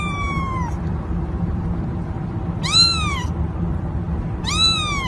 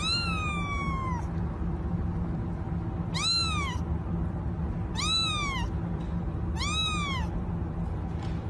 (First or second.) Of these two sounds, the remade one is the first